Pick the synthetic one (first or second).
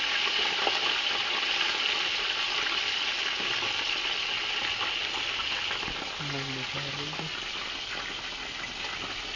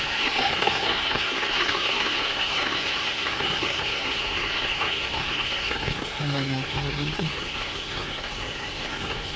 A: second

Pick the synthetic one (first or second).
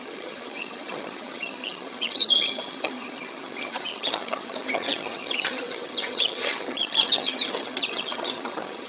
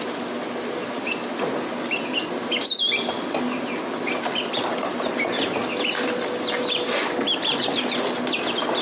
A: first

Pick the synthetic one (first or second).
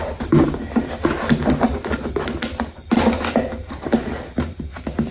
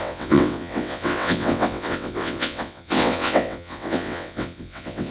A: second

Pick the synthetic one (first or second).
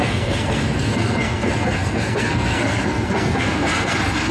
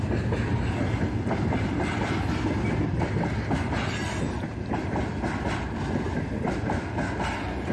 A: first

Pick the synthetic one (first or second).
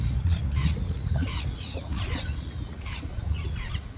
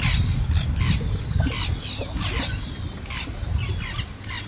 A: first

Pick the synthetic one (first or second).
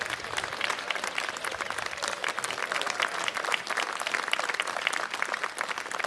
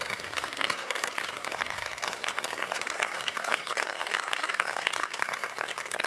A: second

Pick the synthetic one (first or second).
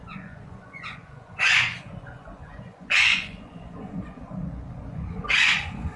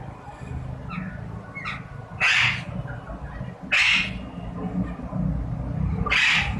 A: first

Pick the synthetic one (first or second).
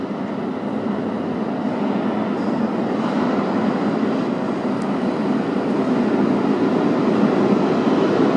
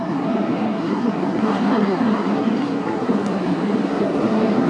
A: second